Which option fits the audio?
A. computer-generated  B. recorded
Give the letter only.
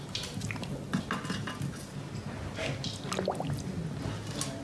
B